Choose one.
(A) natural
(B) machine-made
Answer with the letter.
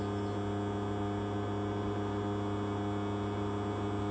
A